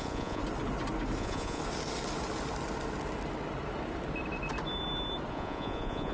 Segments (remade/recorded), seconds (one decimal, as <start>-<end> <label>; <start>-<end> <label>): 0.0-0.4 remade; 0.4-1.2 recorded; 1.2-1.6 remade; 1.6-5.3 recorded; 5.3-6.1 remade